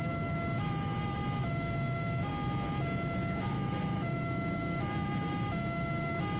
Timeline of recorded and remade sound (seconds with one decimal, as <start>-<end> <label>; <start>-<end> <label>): 0.0-2.3 remade; 2.3-3.4 recorded; 3.4-6.4 remade